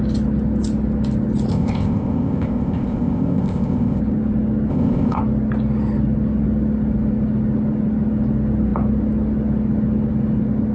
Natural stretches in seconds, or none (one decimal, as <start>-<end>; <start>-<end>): 0.0-1.5; 4.0-4.7; 5.2-10.7